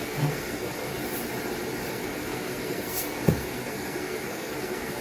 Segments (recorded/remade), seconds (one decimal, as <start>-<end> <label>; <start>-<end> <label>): 0.0-0.9 remade; 0.9-1.9 recorded; 1.9-5.0 remade